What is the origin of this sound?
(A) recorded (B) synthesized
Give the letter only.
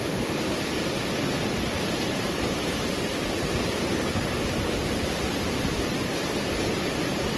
A